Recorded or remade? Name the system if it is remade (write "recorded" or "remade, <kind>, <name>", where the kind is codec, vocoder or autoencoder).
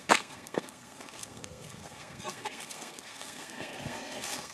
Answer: remade, codec, SNAC